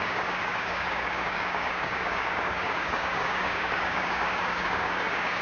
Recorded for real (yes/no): no